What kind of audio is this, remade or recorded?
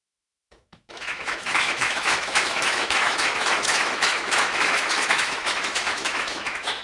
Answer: remade